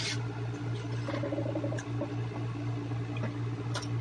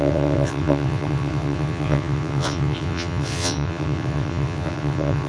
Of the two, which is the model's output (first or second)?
second